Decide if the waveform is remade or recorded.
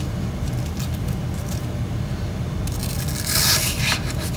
recorded